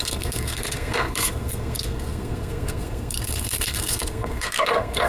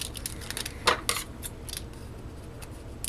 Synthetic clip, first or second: first